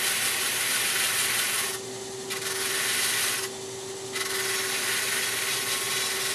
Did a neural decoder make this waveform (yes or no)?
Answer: no